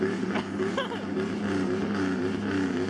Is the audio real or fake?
real